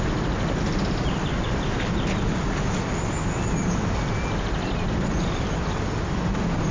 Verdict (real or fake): real